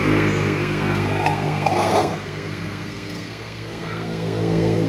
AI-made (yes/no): yes